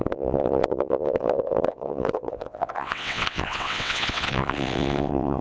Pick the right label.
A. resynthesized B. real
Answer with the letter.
A